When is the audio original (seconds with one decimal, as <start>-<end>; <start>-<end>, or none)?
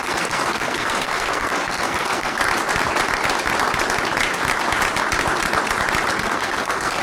2.4-6.2